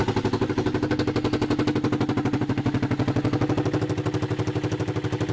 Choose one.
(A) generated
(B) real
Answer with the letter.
B